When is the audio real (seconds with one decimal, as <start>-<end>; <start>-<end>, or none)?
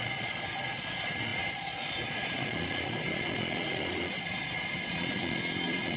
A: none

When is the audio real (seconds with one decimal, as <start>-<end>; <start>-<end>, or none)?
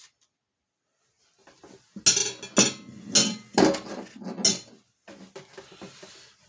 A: 0.0-6.5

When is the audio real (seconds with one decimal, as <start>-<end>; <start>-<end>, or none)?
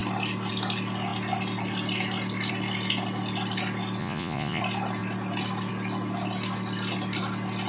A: 0.0-4.0; 4.6-7.7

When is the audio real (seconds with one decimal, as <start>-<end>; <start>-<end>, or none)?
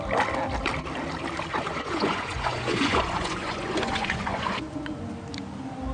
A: 0.0-1.5; 5.0-5.9